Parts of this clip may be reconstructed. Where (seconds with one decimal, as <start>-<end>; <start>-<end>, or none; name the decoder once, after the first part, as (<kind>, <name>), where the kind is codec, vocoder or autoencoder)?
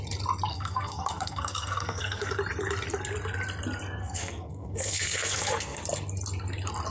0.5-2.3 (codec, SNAC); 4.0-5.8